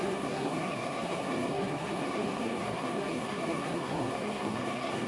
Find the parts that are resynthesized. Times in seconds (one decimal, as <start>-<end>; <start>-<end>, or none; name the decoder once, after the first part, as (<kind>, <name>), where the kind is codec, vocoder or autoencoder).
0.0-5.1 (codec, SNAC)